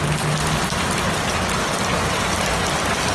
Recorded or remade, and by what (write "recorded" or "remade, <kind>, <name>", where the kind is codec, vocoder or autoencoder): recorded